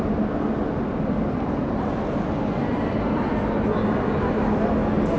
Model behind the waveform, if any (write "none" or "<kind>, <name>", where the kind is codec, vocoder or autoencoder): none